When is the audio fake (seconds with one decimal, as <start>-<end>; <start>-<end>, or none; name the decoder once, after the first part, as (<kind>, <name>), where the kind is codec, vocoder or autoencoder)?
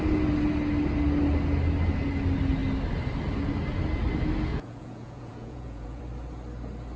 4.5-6.0 (vocoder, Vocos)